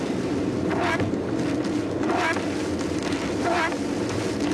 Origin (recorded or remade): recorded